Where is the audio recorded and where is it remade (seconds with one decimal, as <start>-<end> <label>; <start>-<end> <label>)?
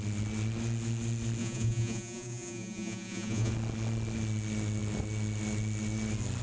0.0-1.4 recorded; 1.4-3.5 remade; 3.5-6.4 recorded